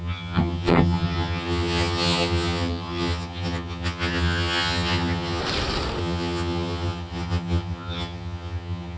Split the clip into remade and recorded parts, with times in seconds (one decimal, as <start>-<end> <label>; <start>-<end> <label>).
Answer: 0.0-5.4 remade; 5.4-6.0 recorded; 6.0-9.0 remade